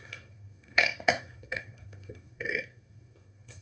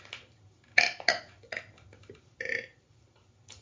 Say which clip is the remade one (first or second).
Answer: first